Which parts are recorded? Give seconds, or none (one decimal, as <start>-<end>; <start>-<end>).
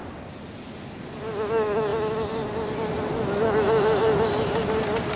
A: 0.0-5.2